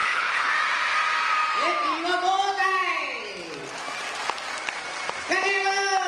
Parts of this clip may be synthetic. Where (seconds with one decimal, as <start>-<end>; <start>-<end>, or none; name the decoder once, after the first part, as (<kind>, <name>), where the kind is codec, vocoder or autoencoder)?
0.0-0.5 (codec, HILCodec)